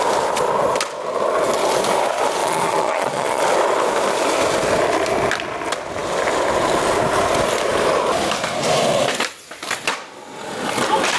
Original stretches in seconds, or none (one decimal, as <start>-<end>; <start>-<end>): 0.0-2.4; 3.4-11.2